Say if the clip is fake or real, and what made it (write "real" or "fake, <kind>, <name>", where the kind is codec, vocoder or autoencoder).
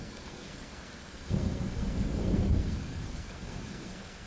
fake, codec, SNAC